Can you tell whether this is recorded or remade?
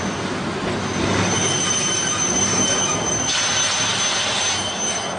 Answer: recorded